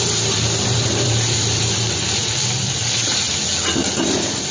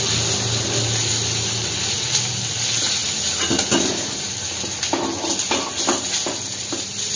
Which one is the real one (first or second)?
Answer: second